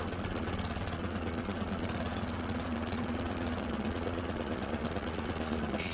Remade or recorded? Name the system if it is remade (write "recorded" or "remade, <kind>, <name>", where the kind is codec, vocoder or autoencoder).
remade, vocoder, Vocos